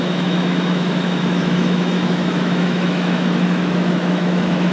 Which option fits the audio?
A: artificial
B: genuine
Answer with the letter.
A